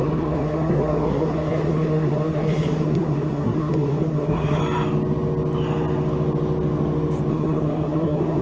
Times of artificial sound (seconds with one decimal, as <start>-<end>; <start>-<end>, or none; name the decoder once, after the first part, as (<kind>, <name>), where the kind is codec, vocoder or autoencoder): 0.0-4.6 (codec, SNAC); 7.3-8.4